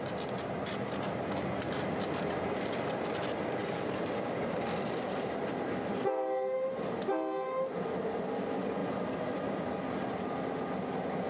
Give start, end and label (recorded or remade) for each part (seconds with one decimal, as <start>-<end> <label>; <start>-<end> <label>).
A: 0.0-11.3 recorded